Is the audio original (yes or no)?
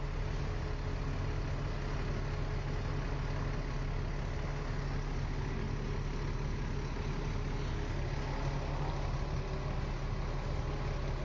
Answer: yes